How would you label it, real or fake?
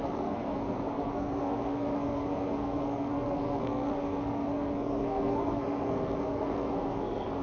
fake